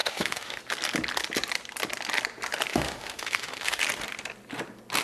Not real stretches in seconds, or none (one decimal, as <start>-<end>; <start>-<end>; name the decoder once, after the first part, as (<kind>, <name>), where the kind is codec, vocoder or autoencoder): 0.0-0.6 (autoencoder, DAC-VAE); 2.7-3.8